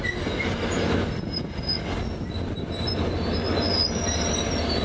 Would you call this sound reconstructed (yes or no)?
no